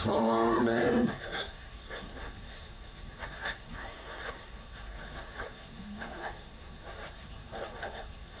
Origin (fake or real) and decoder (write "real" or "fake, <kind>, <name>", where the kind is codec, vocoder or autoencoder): fake, codec, SNAC